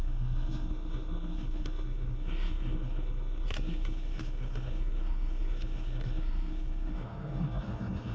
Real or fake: fake